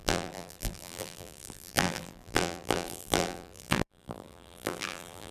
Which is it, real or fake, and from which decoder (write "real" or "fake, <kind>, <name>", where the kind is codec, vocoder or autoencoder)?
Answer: fake, vocoder, BigVGAN v2